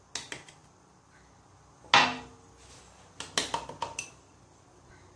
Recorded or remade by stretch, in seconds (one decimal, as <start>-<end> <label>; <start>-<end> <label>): 0.0-5.2 recorded